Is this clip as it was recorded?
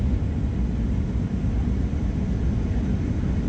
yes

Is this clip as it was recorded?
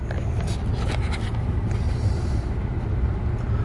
yes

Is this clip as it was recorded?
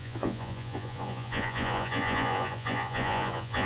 no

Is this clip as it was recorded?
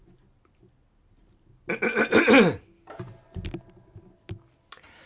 yes